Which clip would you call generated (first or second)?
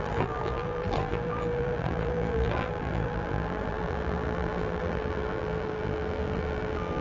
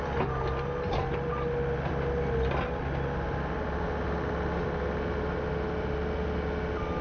first